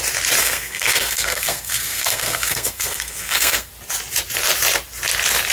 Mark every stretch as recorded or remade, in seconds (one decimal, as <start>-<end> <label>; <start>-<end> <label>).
0.0-0.4 recorded; 0.4-3.7 remade; 3.7-5.5 recorded